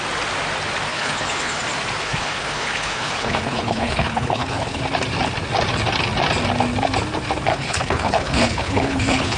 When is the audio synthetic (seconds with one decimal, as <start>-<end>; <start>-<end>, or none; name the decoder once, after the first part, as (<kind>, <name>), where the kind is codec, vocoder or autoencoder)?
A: 0.9-1.6 (codec, HILCodec); 2.0-4.8; 7.5-9.4